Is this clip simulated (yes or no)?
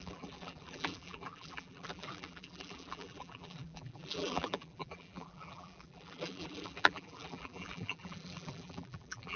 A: yes